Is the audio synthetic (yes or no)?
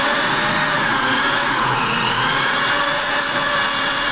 yes